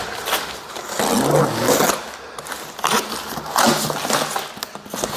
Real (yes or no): yes